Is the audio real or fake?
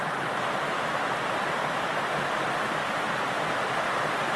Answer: real